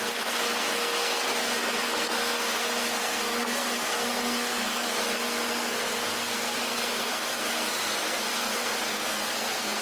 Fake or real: fake